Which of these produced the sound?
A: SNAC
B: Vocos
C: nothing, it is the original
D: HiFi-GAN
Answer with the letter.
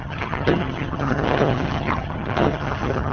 D